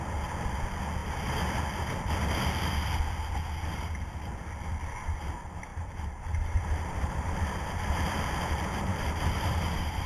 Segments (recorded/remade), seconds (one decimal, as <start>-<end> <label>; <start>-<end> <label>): 0.0-5.7 recorded; 5.7-8.1 remade; 8.1-8.9 recorded; 8.9-10.1 remade